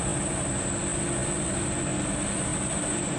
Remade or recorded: recorded